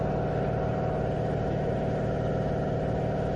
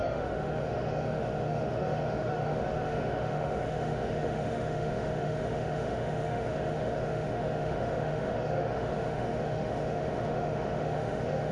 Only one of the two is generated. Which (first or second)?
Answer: second